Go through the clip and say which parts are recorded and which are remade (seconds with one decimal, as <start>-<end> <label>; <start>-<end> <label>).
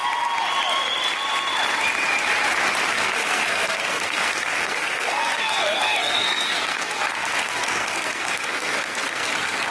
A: 0.0-2.9 recorded; 2.9-9.7 remade